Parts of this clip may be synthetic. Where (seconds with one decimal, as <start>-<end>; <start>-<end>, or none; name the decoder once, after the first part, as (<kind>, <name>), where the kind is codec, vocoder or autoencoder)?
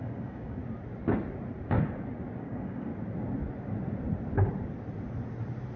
0.0-0.6 (codec, DAC); 2.4-2.9